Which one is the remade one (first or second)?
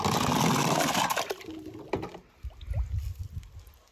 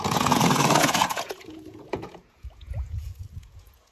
second